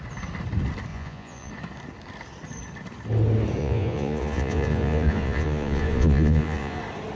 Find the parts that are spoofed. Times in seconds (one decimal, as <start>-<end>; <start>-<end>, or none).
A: 0.9-1.5; 3.6-6.8

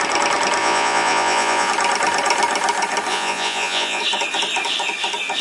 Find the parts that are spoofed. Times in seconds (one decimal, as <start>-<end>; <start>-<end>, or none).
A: 0.6-1.7; 3.1-4.0

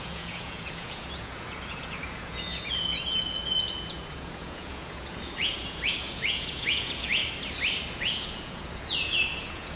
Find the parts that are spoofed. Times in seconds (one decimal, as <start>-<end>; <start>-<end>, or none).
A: 0.0-7.2; 7.9-9.8

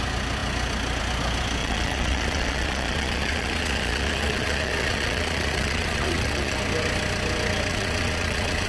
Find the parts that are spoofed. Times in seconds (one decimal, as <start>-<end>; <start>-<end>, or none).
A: 1.6-6.6; 7.7-8.7

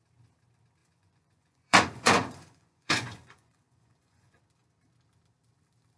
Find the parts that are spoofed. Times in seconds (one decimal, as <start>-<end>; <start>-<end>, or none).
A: 0.8-4.4

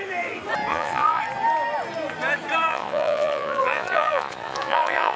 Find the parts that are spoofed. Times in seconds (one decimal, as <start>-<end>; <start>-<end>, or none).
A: 0.7-1.2; 2.7-5.2

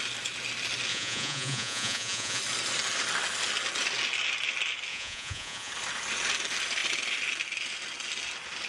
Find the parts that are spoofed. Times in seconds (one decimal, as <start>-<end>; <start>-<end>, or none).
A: 0.9-2.4; 4.9-5.7